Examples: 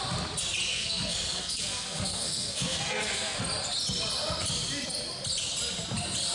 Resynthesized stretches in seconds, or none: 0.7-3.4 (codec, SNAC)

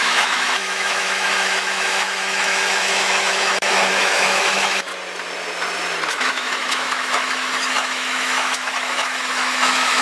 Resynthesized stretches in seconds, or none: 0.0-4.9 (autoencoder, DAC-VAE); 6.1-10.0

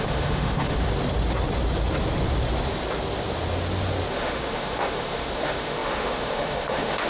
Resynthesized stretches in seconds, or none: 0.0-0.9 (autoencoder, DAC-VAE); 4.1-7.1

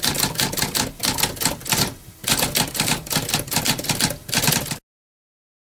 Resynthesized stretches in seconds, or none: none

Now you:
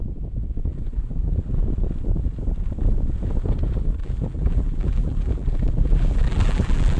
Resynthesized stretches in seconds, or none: 0.7-1.6 (vocoder, BigVGAN v2); 4.0-7.0

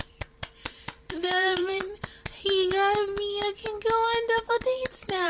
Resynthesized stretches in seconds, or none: 0.0-1.8 (vocoder, BigVGAN v2); 4.5-5.3